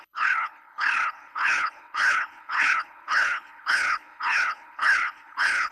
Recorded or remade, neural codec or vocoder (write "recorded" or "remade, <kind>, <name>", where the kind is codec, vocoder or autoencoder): remade, codec, HILCodec